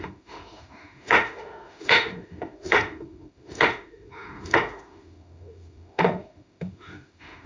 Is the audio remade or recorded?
remade